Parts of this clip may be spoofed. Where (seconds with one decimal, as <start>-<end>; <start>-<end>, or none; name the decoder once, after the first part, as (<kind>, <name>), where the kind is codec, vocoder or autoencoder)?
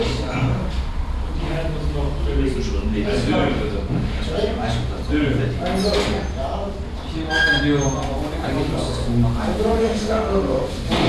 9.8-10.6 (autoencoder, DAC-VAE)